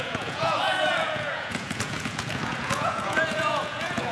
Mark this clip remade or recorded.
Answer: remade